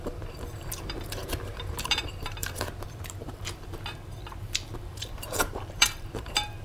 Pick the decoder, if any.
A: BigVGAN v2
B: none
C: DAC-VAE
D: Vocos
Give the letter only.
A